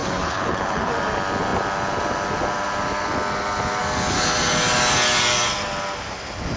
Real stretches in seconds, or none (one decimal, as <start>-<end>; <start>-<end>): 0.9-6.6